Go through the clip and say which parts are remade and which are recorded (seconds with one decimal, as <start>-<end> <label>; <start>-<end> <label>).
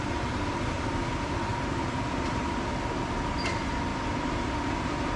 0.0-1.5 recorded; 1.5-2.5 remade; 2.5-5.2 recorded